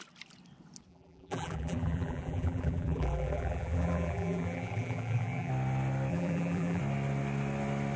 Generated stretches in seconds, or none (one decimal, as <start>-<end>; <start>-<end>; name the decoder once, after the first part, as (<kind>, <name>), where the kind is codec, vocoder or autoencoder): 0.9-5.5 (vocoder, BigVGAN v2); 6.1-6.8